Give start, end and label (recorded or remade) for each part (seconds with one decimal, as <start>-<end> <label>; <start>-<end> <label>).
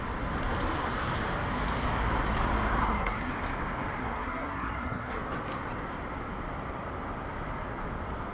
0.0-2.8 recorded; 2.8-3.3 remade; 3.3-4.0 recorded; 4.0-5.2 remade; 5.2-8.3 recorded